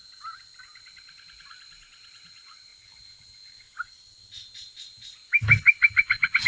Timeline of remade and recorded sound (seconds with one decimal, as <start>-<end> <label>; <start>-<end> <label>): 0.0-6.5 recorded